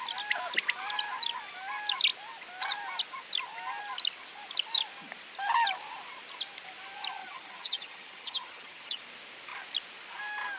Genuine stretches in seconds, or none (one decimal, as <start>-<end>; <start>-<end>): 0.0-7.2; 9.0-10.6